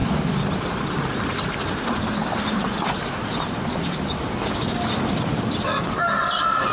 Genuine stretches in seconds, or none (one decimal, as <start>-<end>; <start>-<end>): 0.0-6.7

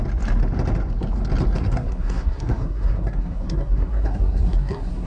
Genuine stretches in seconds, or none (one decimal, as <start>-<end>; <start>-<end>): 0.0-1.6

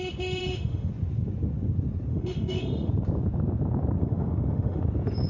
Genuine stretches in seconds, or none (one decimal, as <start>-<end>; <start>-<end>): 0.0-0.4; 0.9-2.1; 2.9-4.0; 4.8-5.3

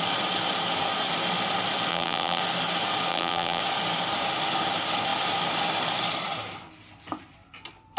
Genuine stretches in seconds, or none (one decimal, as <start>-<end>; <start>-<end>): 0.0-1.9; 2.4-3.1; 3.6-8.0